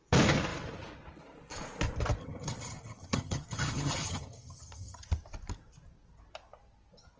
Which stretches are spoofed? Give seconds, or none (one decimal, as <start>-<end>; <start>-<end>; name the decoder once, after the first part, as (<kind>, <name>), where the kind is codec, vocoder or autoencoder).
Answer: 2.2-5.0 (vocoder, HiFi-GAN)